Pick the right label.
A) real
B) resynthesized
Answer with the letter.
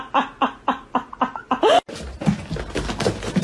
A